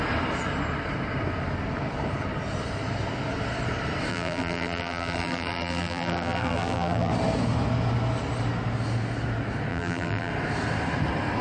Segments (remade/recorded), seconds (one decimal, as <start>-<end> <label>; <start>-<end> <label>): 0.0-4.1 recorded; 4.1-7.1 remade; 7.1-9.7 recorded; 9.7-10.3 remade; 10.3-11.4 recorded